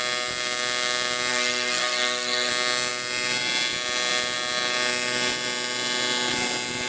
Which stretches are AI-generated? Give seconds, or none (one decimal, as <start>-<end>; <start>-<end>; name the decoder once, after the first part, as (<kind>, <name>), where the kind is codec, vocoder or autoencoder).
1.3-2.5 (codec, SNAC)